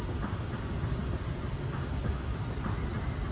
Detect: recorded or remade recorded